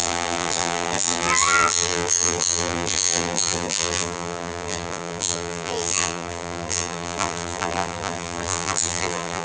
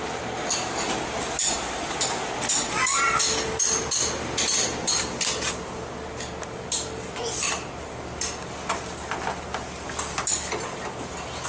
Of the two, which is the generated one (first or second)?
first